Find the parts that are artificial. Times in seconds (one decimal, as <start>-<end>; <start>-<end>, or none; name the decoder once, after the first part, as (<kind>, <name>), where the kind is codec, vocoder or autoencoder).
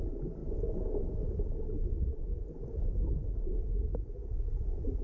none